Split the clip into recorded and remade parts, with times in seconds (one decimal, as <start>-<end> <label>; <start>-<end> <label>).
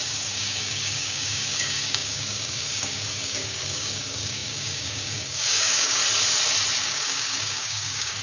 0.0-6.0 remade; 6.0-6.8 recorded; 6.8-8.2 remade